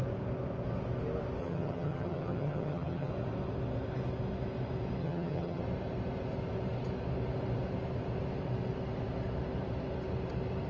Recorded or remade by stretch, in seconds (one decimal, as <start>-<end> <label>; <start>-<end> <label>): 0.0-1.4 recorded; 1.4-3.1 remade; 3.1-5.0 recorded; 5.0-5.6 remade; 5.6-10.7 recorded